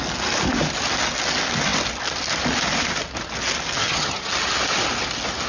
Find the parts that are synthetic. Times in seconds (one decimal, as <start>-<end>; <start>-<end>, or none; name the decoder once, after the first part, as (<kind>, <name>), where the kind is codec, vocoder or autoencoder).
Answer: 3.8-4.3 (vocoder, HiFi-GAN)